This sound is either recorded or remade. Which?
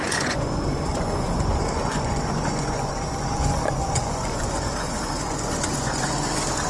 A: remade